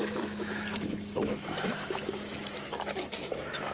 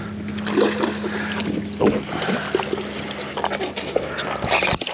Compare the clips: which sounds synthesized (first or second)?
first